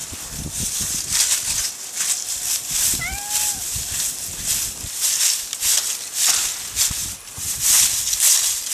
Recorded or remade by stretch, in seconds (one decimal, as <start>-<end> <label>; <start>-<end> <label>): 0.0-0.7 remade; 0.7-2.3 recorded; 2.3-2.9 remade; 2.9-7.0 recorded; 7.0-7.5 remade; 7.5-8.7 recorded